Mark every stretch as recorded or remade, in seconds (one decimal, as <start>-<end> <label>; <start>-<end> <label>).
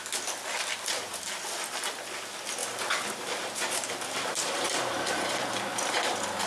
0.0-2.6 recorded; 2.6-6.0 remade; 6.0-6.5 recorded